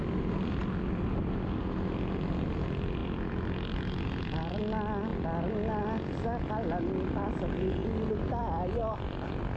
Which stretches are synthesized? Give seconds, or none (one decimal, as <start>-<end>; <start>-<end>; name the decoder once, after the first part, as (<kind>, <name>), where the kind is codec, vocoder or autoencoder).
8.8-9.6 (vocoder, BigVGAN v2)